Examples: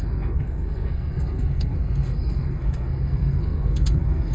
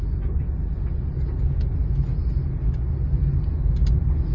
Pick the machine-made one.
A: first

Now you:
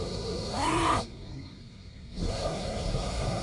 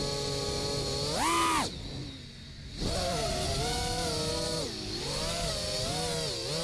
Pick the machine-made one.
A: first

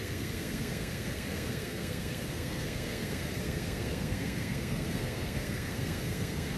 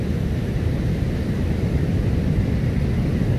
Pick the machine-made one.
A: first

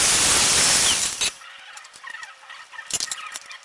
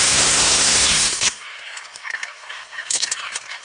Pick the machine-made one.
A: second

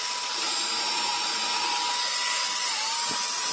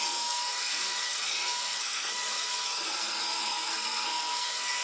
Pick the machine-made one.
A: second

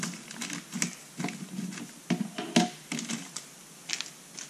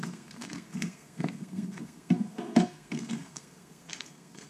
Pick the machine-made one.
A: second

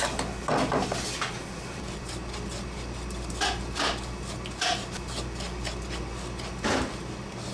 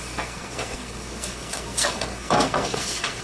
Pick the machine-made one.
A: second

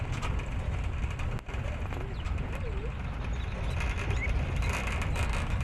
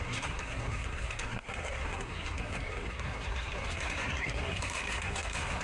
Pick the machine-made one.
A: second